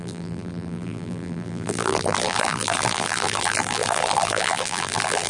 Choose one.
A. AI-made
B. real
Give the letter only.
A